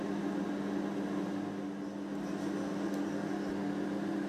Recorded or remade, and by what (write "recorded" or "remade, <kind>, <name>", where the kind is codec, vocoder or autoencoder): recorded